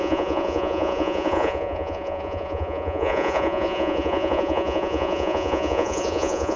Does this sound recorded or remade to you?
remade